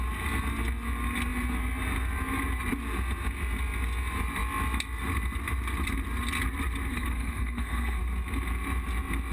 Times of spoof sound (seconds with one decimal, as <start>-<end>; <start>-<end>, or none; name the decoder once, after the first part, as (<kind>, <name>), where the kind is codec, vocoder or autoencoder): 6.9-8.0 (codec, SNAC)